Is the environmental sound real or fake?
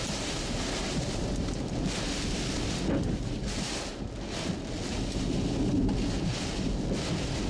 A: real